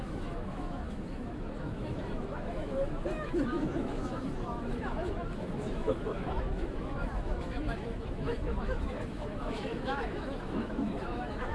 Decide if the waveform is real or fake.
fake